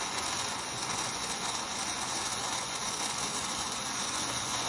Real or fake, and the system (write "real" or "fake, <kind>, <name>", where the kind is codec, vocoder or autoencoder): fake, vocoder, Vocos